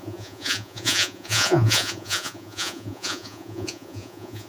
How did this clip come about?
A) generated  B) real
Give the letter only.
A